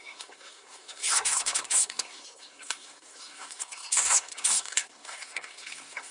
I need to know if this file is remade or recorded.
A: remade